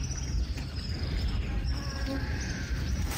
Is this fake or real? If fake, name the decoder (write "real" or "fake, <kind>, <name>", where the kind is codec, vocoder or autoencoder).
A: real